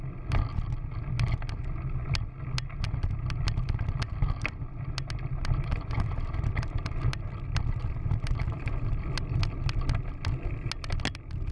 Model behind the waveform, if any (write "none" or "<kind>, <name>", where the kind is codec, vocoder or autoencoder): none